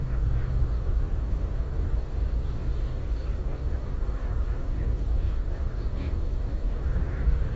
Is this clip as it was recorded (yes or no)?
no